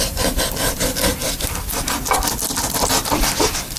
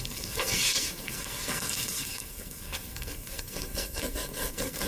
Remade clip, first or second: second